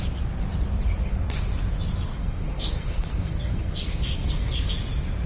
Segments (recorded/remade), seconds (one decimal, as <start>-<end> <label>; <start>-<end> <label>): 0.0-2.1 recorded; 2.1-4.7 remade; 4.7-5.3 recorded